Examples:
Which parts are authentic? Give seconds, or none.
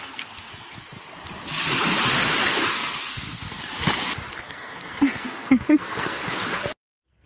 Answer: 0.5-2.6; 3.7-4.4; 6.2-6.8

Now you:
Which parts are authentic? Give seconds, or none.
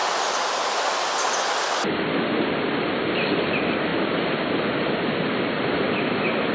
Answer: 0.0-6.5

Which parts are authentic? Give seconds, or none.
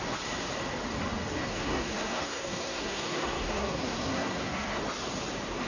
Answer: 0.0-1.4; 4.8-5.7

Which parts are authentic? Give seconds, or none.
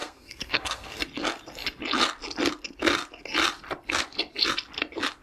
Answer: 1.0-5.2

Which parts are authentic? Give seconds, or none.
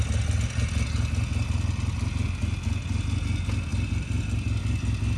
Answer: 0.0-5.2